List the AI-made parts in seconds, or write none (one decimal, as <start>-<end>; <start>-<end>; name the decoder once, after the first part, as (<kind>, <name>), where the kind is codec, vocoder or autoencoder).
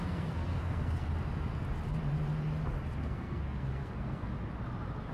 0.0-1.1 (codec, SNAC); 3.0-4.3